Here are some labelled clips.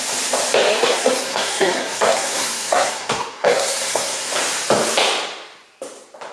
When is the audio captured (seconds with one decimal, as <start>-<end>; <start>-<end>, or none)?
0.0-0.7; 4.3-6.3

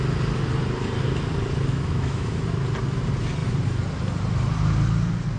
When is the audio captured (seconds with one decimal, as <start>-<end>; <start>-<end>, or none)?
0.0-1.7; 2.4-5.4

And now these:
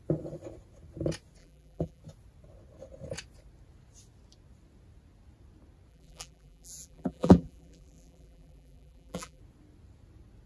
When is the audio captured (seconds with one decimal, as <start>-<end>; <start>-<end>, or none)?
0.0-1.4; 2.0-5.9; 9.4-10.5

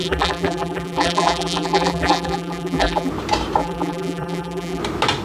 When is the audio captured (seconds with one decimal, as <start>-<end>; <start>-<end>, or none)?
3.1-3.6; 4.8-5.2